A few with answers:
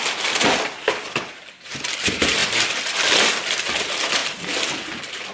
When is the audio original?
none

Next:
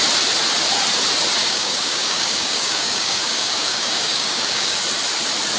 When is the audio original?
0.0-1.4; 4.8-5.6

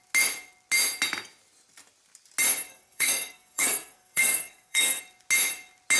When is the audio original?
0.0-2.7; 5.0-6.0